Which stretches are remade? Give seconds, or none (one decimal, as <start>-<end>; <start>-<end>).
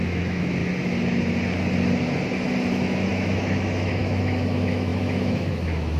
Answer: 0.0-0.6; 2.7-6.0